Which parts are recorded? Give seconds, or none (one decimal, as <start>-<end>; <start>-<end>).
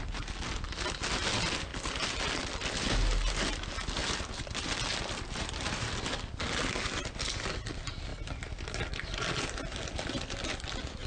0.0-11.1